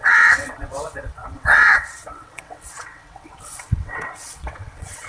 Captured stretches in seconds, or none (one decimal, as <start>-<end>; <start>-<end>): none